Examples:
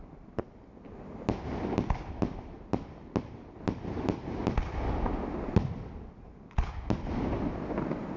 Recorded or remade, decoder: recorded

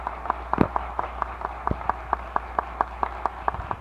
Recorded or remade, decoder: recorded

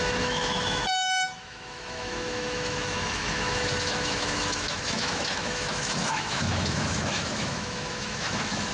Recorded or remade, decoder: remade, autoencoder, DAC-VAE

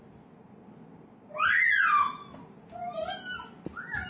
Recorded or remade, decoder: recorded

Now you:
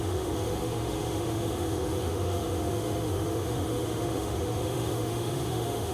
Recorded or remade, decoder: remade, autoencoder, DAC-VAE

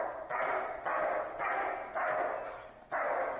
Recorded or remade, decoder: recorded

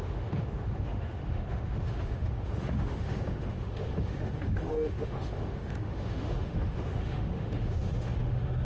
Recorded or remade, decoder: remade, autoencoder, DAC-VAE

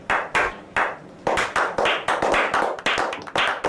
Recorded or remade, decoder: recorded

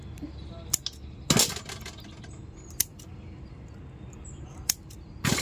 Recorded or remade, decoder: recorded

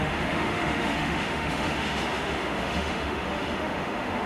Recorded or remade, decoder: remade, autoencoder, DAC-VAE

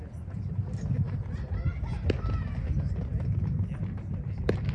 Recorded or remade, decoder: recorded